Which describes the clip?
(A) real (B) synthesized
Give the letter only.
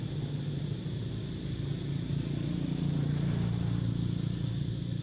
A